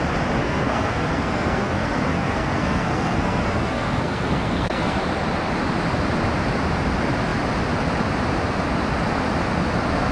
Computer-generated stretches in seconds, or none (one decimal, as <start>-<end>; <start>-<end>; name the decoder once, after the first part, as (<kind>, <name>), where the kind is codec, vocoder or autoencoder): 0.4-5.0 (codec, SNAC)